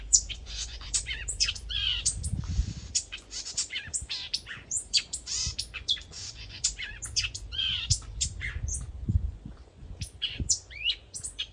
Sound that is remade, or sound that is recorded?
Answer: remade